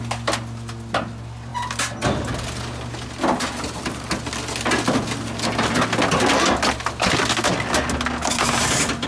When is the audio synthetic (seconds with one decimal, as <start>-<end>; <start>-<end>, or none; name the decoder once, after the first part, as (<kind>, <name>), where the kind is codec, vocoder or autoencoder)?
none